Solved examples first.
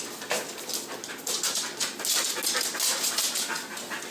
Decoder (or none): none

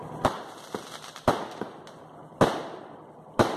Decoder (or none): none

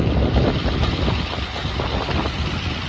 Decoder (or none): none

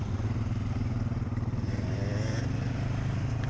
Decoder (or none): vocoder, BigVGAN v2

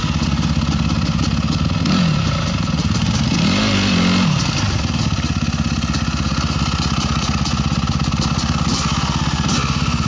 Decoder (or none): none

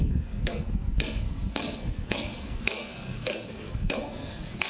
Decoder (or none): codec, SNAC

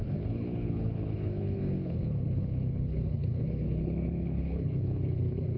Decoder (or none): codec, HILCodec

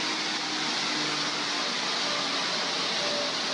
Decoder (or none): none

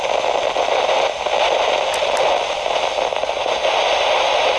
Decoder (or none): none